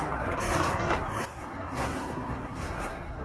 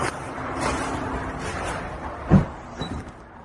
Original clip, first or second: second